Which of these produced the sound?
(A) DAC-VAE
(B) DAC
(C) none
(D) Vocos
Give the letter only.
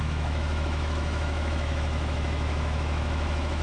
A